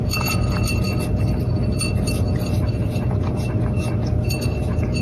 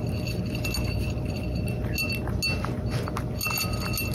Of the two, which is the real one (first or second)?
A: second